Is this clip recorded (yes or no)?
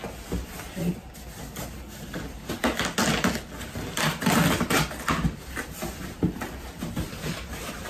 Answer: yes